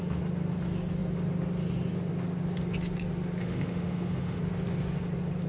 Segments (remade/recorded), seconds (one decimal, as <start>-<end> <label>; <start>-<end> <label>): 0.0-3.4 recorded; 3.4-4.4 remade; 4.4-5.5 recorded